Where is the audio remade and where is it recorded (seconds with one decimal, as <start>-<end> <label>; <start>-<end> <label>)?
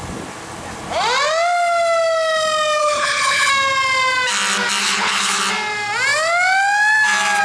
0.0-2.8 recorded; 2.8-3.5 remade; 3.5-4.8 recorded; 4.8-5.4 remade; 5.4-7.4 recorded